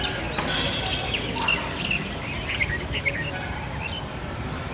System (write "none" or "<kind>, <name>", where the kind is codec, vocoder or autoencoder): none